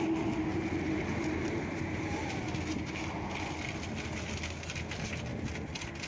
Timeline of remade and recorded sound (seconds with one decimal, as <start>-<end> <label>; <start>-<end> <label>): 0.0-0.5 recorded; 0.5-1.9 remade; 1.9-6.1 recorded